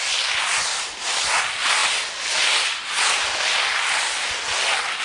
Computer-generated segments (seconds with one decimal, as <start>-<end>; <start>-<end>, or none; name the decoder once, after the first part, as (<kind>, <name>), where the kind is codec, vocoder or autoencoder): none